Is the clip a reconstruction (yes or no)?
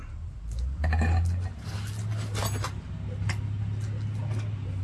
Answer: no